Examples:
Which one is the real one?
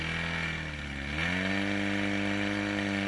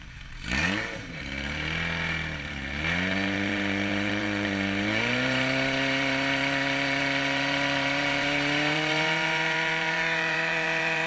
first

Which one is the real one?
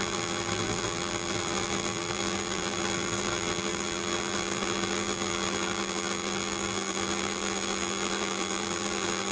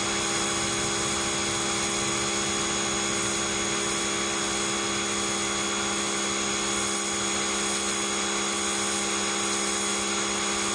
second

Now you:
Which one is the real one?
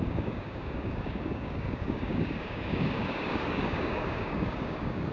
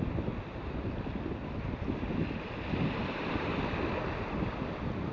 second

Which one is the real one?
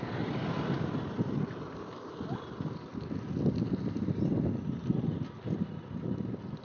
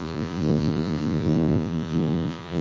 first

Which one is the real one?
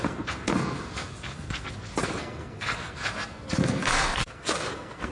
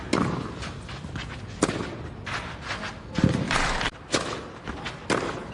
second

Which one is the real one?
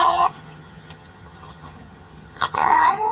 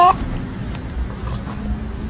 second